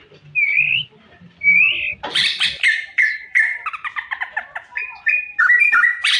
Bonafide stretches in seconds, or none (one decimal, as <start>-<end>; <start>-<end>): 0.0-6.2